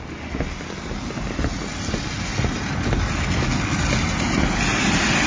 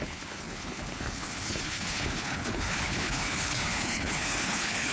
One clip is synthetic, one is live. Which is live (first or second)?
first